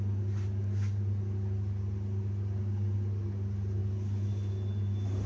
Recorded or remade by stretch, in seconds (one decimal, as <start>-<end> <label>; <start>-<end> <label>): 0.0-5.3 recorded